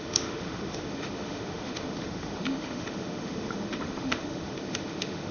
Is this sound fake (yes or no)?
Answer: yes